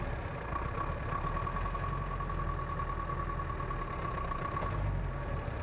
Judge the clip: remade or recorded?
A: recorded